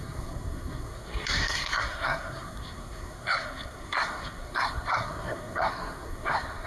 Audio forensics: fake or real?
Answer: fake